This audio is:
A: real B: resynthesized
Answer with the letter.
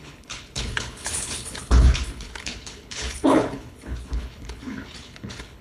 B